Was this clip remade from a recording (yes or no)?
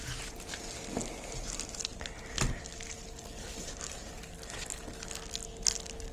no